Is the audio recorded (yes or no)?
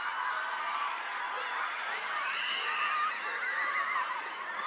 yes